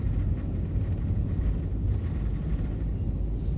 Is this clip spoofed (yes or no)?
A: no